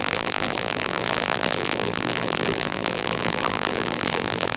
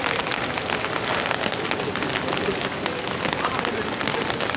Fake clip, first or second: first